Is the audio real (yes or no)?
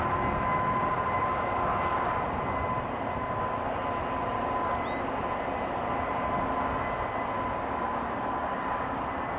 yes